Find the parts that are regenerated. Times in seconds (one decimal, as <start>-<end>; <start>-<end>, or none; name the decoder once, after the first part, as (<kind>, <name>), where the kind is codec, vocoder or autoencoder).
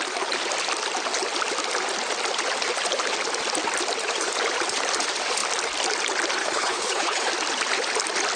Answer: 6.4-7.3 (codec, HILCodec)